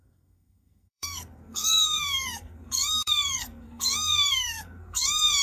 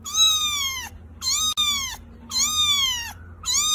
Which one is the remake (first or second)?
first